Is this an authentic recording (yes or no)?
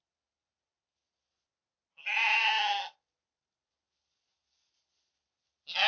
yes